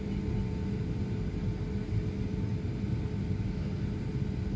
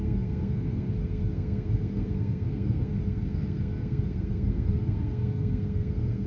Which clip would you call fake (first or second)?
second